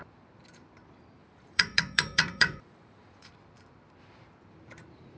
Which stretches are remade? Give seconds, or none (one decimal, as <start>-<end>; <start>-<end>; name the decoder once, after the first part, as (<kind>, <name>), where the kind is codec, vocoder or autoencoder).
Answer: 1.2-3.3 (vocoder, Vocos)